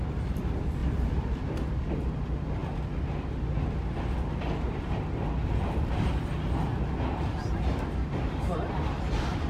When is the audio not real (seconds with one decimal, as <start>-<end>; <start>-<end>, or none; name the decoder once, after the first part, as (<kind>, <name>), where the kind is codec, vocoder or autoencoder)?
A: 0.8-1.7 (vocoder, BigVGAN v2); 6.7-7.4